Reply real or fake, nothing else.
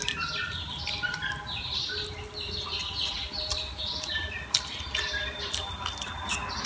real